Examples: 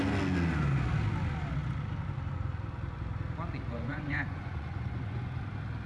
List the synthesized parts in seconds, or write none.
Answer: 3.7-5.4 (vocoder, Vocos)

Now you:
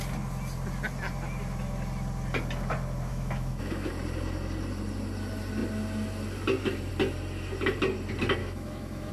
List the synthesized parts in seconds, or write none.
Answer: 3.1-3.9 (autoencoder, DAC-VAE); 8.4-9.1